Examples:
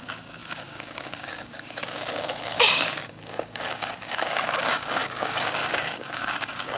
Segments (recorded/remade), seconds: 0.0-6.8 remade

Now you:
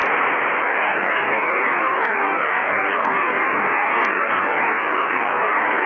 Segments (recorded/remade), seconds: 0.0-0.6 recorded; 0.6-5.9 remade

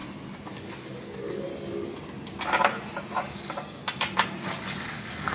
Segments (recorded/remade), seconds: 0.0-0.5 recorded; 0.5-1.5 remade; 1.5-3.2 recorded; 3.2-3.8 remade; 3.8-4.6 recorded; 4.6-5.3 remade

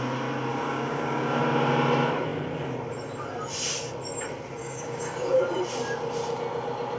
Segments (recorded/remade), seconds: 0.0-0.5 recorded; 0.5-1.4 remade; 1.4-4.6 recorded; 4.6-5.4 remade; 5.4-7.0 recorded

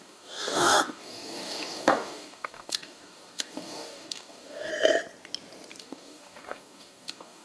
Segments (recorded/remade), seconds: 0.0-4.7 remade; 4.7-5.8 recorded; 5.8-7.4 remade